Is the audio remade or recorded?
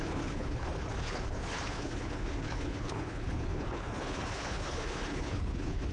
remade